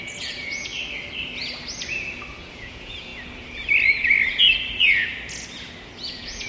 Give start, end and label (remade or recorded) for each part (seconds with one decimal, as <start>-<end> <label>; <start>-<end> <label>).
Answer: 0.0-0.7 remade; 0.7-2.3 recorded; 2.3-3.1 remade; 3.1-6.1 recorded; 6.1-6.5 remade